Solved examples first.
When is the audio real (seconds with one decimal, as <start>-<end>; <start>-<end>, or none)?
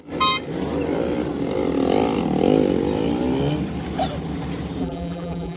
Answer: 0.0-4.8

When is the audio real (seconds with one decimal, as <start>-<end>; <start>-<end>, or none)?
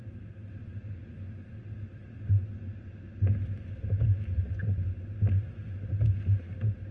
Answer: 0.0-6.9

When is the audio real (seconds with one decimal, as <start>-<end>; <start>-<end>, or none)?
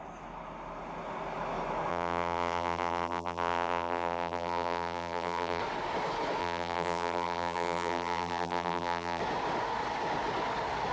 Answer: 0.0-1.9; 5.6-6.4; 9.2-10.9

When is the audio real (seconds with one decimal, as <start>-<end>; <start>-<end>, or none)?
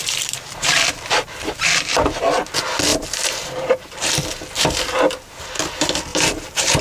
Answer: 2.2-2.9; 4.1-6.1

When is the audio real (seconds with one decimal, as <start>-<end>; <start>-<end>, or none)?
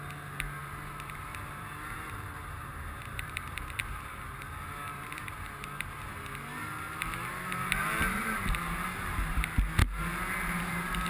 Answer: 0.0-0.6; 3.8-4.9; 5.4-6.6; 9.4-9.8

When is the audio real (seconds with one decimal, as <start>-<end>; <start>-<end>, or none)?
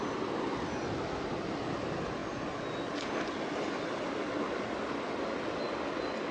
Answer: 0.0-6.3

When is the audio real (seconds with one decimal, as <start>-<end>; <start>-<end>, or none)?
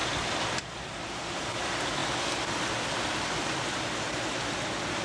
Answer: 1.6-5.0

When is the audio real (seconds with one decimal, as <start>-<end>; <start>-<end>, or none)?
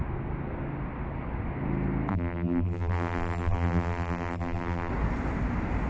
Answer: 0.0-2.1; 4.9-5.9